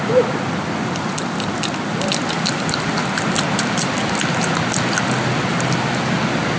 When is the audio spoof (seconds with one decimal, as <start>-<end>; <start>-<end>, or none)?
none